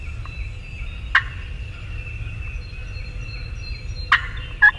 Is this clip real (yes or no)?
yes